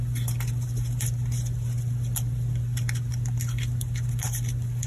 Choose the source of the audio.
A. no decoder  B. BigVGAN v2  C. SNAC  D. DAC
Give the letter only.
B